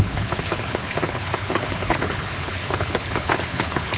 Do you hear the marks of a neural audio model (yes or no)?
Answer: yes